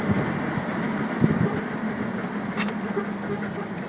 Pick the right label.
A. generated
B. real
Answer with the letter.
B